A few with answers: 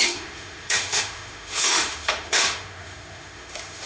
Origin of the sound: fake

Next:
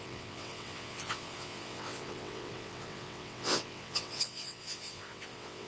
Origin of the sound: fake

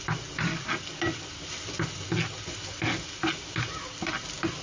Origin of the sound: real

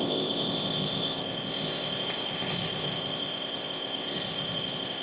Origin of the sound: fake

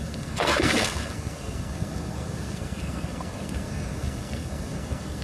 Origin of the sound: fake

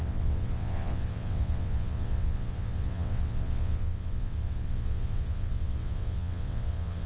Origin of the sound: fake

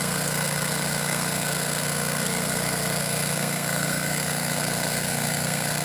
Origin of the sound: fake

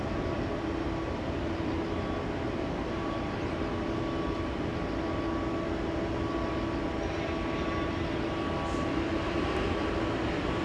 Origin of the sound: real